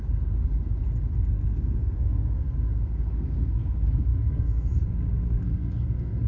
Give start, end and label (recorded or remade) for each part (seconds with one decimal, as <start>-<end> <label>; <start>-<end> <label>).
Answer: 0.0-0.4 remade; 0.4-1.2 recorded; 1.2-6.3 remade